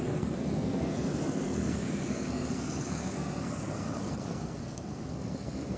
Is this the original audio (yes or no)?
no